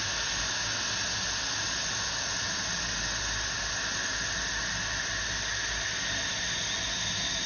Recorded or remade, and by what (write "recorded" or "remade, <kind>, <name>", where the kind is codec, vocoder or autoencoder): recorded